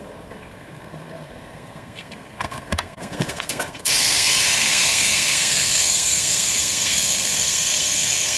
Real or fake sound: fake